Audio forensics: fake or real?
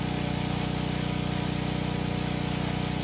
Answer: real